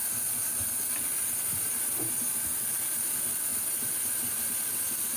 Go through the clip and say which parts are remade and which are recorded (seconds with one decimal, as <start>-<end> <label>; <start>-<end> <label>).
0.0-5.2 recorded